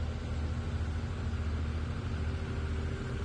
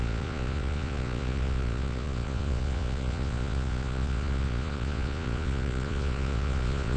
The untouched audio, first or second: first